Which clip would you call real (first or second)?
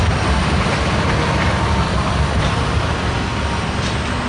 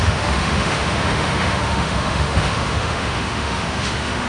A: first